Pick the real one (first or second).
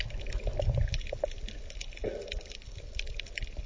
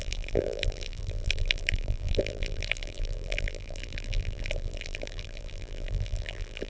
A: first